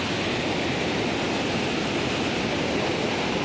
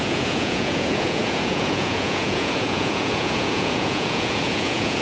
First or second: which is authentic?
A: first